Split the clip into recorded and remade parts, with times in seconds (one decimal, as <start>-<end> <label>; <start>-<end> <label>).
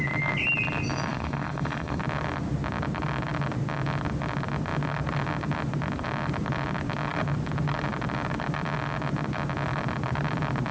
0.0-1.1 recorded; 1.1-2.0 remade; 2.0-10.7 recorded